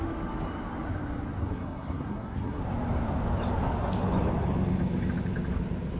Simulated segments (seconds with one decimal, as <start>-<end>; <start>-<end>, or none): 1.4-2.6